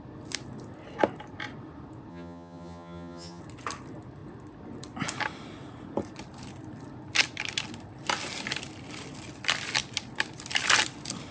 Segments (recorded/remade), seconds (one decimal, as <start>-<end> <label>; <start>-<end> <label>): 0.0-2.1 recorded; 2.1-3.4 remade; 3.4-11.3 recorded